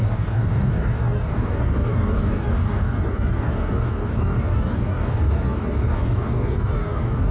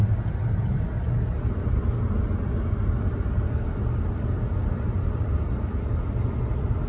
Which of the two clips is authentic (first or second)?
second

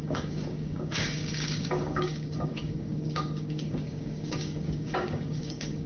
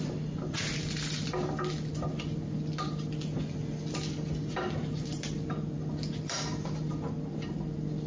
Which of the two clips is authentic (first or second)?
second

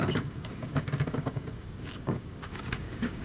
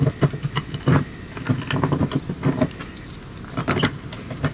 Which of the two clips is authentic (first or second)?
second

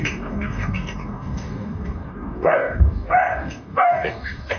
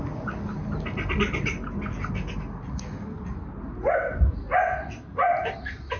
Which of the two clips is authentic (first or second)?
second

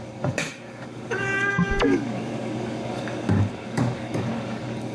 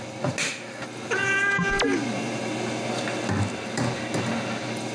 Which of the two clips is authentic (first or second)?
second